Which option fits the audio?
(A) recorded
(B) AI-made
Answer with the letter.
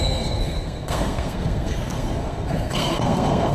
B